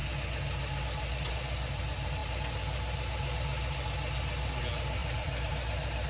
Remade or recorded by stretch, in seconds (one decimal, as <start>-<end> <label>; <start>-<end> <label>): 0.0-5.0 recorded; 5.0-5.5 remade; 5.5-6.1 recorded